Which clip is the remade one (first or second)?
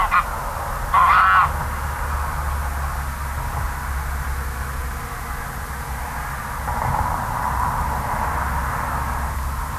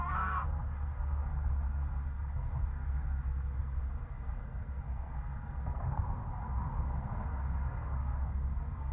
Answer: second